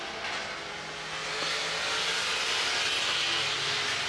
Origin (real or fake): real